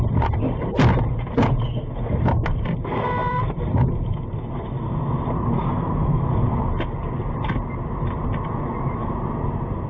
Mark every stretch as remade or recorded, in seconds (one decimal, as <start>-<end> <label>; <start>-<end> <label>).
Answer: 0.0-3.2 recorded; 3.2-3.9 remade; 3.9-5.6 recorded; 5.6-6.6 remade; 6.6-9.9 recorded